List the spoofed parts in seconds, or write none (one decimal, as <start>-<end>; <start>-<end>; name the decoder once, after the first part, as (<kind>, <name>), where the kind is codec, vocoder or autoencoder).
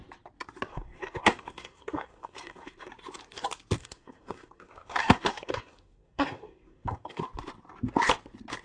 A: 0.7-2.9 (codec, SNAC); 3.8-7.2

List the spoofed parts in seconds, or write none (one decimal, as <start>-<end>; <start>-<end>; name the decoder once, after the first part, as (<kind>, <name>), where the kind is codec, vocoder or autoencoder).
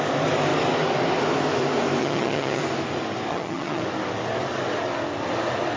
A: 2.0-2.6 (vocoder, HiFi-GAN); 3.3-3.8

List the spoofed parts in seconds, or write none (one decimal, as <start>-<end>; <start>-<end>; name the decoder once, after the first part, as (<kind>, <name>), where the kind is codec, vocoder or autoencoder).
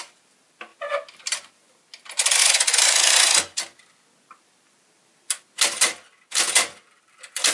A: 2.4-3.6 (vocoder, Vocos)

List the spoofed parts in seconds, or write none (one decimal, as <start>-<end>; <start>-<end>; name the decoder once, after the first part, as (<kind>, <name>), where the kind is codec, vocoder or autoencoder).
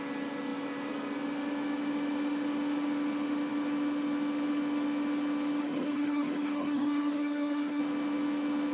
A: 5.6-7.8 (codec, SNAC)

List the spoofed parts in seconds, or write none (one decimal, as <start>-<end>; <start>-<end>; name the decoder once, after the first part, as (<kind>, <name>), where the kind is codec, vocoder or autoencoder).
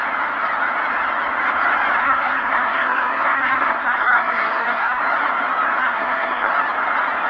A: 2.0-5.0 (codec, SNAC); 5.8-6.5